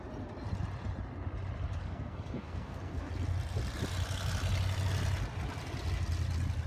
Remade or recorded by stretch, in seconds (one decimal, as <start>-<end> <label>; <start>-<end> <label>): 0.0-1.8 recorded; 1.8-3.1 remade; 3.1-6.7 recorded